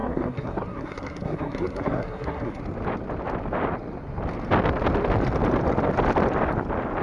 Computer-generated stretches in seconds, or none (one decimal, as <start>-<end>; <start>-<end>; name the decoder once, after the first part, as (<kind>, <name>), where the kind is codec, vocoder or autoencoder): 0.0-2.6 (codec, SNAC)